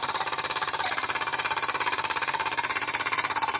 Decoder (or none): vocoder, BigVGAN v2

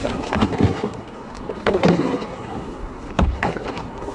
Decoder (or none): codec, SNAC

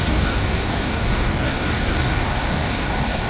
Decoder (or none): codec, DAC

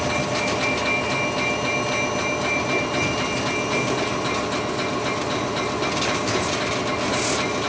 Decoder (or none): none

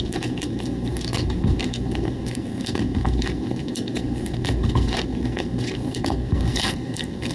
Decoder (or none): codec, SNAC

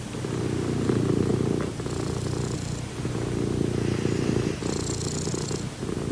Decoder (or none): none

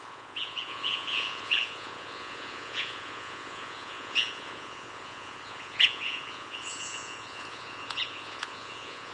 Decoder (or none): vocoder, Vocos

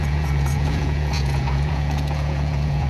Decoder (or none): vocoder, Vocos